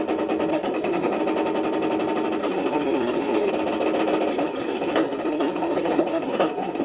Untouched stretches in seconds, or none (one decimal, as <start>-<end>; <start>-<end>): 0.0-0.5; 1.2-2.4; 3.5-4.3